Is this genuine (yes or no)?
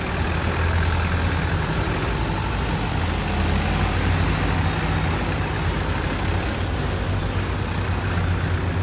yes